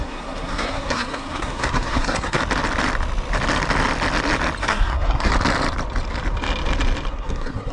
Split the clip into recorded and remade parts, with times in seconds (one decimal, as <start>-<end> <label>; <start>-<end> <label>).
0.0-2.4 remade; 2.4-4.6 recorded; 4.6-5.3 remade; 5.3-7.1 recorded; 7.1-7.7 remade